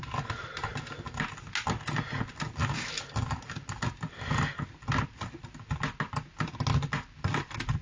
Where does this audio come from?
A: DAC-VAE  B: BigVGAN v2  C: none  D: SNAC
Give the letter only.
C